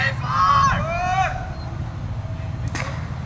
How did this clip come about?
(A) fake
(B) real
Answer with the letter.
B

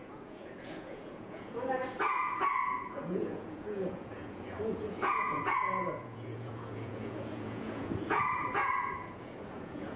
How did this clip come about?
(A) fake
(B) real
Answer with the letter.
A